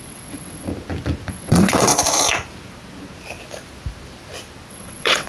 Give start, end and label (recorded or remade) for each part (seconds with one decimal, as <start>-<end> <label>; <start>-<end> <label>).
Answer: 0.0-0.7 remade; 0.7-1.3 recorded; 1.3-1.9 remade; 1.9-4.7 recorded; 4.7-5.3 remade